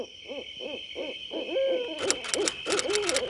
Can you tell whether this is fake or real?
real